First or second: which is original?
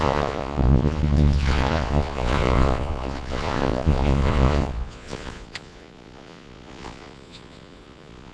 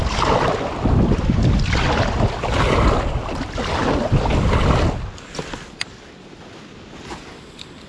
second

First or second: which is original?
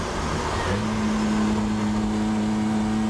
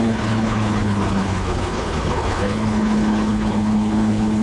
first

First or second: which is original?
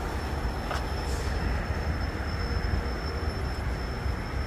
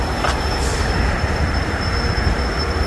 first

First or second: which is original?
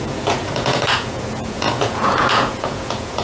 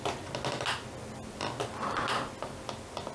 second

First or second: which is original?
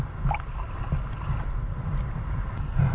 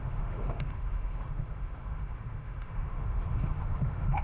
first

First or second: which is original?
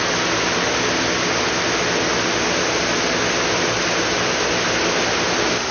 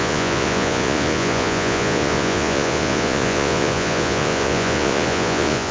first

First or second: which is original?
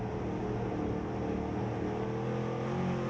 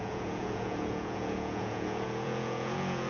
first